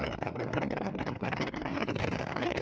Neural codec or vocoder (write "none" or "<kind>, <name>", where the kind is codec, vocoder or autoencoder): codec, SNAC